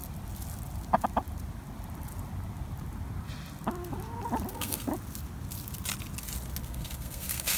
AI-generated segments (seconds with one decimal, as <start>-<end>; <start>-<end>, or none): 4.5-4.9; 6.6-7.6